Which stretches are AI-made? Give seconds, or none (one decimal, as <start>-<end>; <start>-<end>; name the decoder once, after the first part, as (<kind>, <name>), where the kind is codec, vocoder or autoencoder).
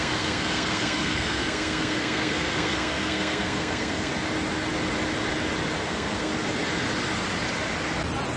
0.0-4.1 (codec, SNAC); 5.8-6.3